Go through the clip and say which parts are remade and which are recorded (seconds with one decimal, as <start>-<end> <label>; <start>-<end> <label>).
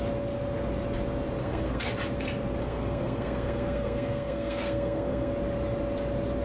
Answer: 0.0-1.4 recorded; 1.4-1.9 remade; 1.9-2.6 recorded; 2.6-5.3 remade; 5.3-6.4 recorded